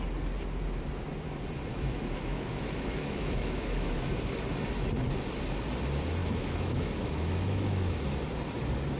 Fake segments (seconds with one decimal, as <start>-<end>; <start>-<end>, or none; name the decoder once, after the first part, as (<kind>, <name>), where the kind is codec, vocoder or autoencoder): 1.7-4.1 (autoencoder, DAC-VAE); 6.2-8.0